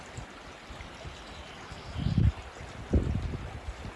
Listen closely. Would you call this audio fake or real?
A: real